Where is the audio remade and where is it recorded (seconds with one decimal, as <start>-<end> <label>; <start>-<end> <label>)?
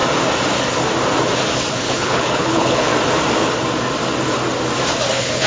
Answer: 0.0-1.7 recorded; 1.7-2.9 remade; 2.9-5.1 recorded; 5.1-5.5 remade